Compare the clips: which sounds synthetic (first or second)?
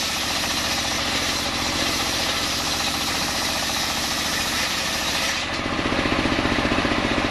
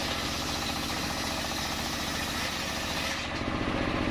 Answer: first